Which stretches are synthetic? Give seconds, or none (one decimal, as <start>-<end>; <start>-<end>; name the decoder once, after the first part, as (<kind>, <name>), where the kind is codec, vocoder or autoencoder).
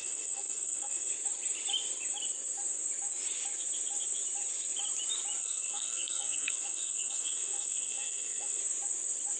0.0-1.1 (codec, SNAC); 5.4-8.6